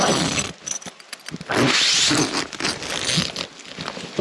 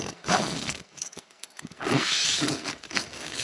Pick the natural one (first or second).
first